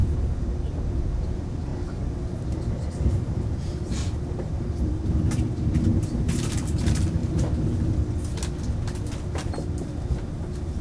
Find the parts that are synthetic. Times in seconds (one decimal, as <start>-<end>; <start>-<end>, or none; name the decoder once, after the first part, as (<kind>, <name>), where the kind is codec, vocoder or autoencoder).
0.9-1.7 (vocoder, BigVGAN v2); 3.2-7.2; 10.1-10.8